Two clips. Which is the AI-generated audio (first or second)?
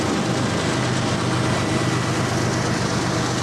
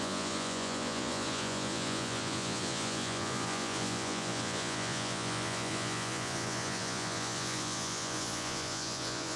second